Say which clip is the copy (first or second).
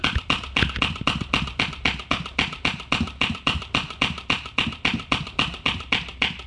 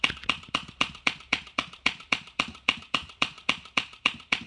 second